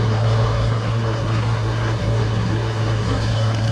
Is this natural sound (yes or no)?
no